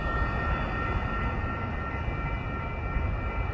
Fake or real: real